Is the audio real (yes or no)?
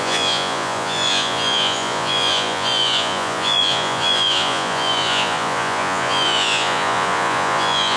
no